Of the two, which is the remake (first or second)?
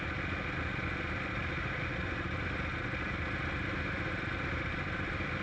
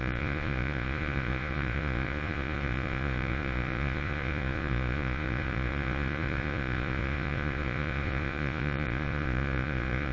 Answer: second